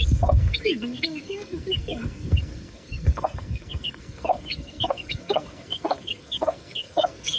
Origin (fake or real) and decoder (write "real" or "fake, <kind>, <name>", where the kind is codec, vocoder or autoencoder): fake, codec, SNAC